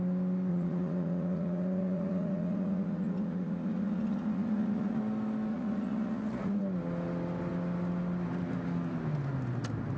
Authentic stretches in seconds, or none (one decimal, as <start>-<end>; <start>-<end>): 0.0-0.5; 5.0-5.5; 6.6-10.0